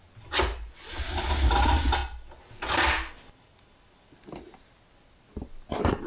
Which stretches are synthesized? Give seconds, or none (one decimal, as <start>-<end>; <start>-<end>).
none